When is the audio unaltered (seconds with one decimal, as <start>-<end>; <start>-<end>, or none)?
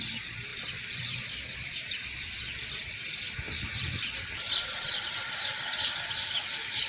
0.0-0.5; 3.1-3.7; 6.1-6.9